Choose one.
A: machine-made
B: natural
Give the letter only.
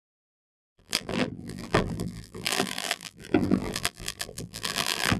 A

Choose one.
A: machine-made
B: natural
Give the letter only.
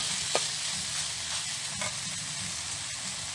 B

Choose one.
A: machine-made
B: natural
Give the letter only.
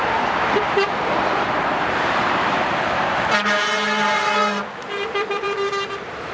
A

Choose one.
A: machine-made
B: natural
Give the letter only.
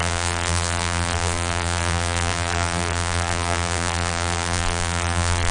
A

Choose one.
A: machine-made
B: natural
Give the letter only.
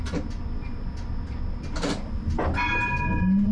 B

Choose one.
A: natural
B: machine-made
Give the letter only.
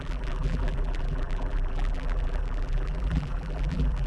B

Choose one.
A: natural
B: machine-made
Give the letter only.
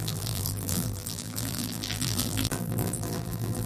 B